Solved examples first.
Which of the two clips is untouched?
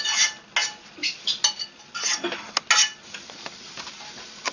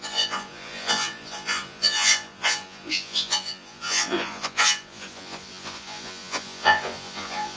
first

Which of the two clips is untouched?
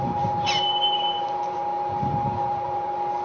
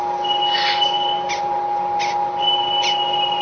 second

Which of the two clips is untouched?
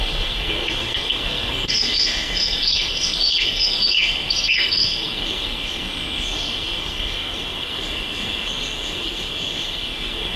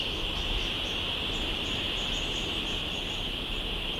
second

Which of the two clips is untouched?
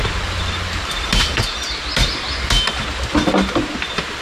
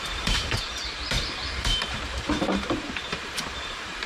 first